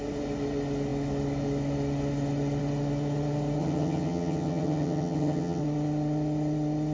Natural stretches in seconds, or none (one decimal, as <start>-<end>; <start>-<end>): 0.0-3.6; 5.6-6.9